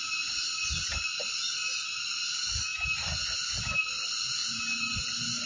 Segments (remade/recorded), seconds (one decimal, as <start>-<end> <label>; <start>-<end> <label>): 0.0-5.5 recorded